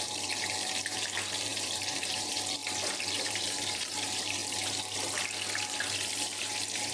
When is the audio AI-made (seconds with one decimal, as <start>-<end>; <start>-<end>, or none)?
0.0-2.6; 3.2-4.4; 6.4-6.9